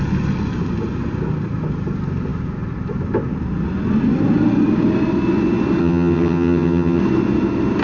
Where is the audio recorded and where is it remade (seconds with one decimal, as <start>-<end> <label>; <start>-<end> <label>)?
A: 0.0-5.8 recorded; 5.8-7.0 remade; 7.0-7.8 recorded